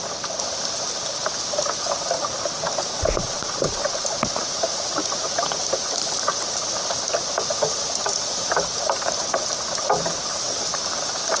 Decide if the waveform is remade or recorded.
recorded